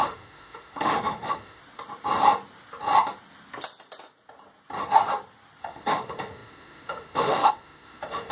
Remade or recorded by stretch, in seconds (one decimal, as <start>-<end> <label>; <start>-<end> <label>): 0.0-1.6 remade; 1.6-5.6 recorded; 5.6-8.3 remade